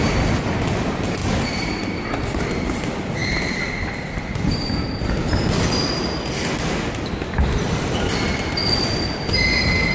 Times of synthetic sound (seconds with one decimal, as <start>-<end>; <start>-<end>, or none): 1.2-1.8; 3.2-3.8